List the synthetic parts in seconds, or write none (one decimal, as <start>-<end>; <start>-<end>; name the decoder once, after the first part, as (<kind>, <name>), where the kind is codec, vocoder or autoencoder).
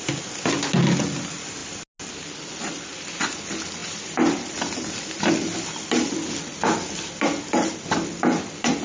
none